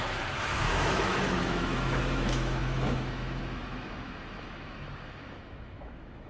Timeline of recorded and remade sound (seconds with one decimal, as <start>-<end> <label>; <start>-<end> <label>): 0.0-6.3 remade